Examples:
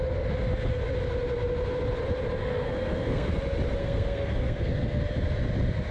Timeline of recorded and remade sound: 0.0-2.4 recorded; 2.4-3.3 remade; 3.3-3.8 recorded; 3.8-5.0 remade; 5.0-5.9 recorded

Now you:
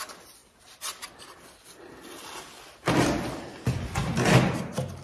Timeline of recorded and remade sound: 0.0-5.0 recorded